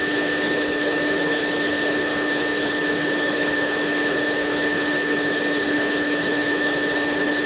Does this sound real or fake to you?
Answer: fake